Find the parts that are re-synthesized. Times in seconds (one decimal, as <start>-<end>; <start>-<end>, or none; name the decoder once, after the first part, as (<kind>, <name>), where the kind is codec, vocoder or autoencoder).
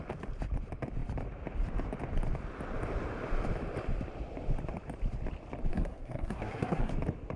5.7-6.9 (codec, SNAC)